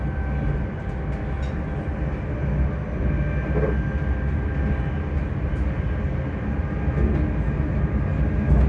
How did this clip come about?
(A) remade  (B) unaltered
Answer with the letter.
B